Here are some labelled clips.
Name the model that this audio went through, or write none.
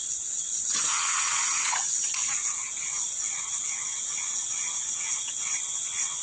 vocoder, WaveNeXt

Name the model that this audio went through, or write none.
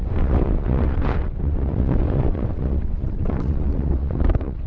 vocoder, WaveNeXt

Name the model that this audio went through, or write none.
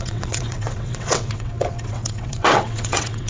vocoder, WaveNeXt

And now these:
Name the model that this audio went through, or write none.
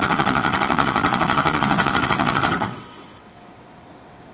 vocoder, WaveNeXt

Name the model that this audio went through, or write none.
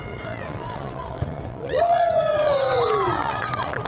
vocoder, WaveNeXt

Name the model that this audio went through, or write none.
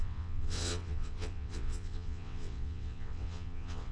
vocoder, WaveNeXt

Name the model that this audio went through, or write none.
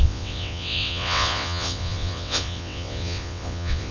vocoder, WaveNeXt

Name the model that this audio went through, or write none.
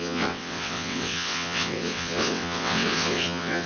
vocoder, WaveNeXt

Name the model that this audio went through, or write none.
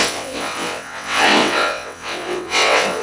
vocoder, WaveNeXt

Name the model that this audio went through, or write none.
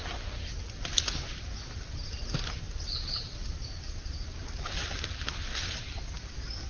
none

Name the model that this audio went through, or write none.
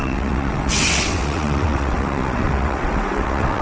vocoder, WaveNeXt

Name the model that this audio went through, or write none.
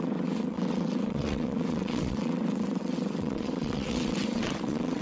vocoder, WaveNeXt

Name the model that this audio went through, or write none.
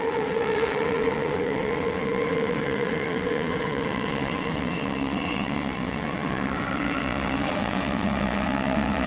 vocoder, WaveNeXt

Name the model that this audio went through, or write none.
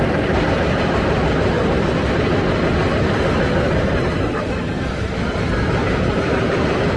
none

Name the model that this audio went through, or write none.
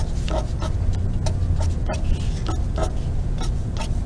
none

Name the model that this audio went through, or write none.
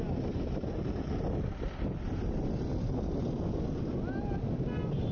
none